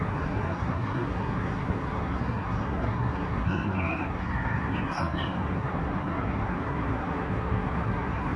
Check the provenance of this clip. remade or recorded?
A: remade